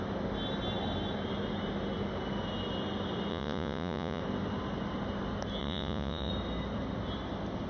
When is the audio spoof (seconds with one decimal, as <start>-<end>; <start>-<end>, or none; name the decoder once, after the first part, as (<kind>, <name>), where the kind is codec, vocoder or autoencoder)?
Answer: 3.3-4.2 (vocoder, Vocos); 5.6-6.3